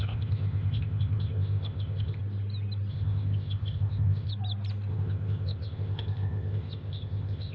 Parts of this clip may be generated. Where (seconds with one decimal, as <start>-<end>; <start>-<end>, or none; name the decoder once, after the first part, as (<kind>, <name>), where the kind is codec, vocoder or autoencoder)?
0.0-2.2 (codec, ZipCodec); 2.9-4.3; 4.9-7.5